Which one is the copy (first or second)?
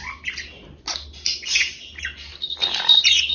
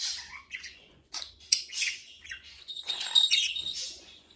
second